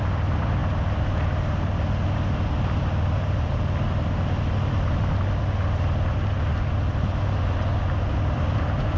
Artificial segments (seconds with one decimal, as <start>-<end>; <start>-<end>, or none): none